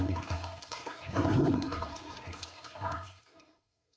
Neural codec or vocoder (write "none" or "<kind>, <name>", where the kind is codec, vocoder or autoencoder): codec, SNAC